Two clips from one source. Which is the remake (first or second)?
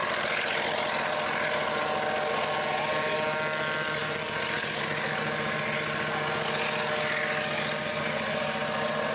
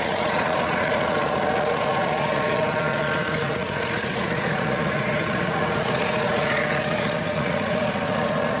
second